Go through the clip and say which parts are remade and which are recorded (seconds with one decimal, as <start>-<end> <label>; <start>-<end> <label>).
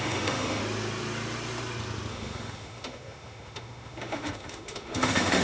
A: 0.0-0.6 remade; 0.6-2.1 recorded; 2.1-5.4 remade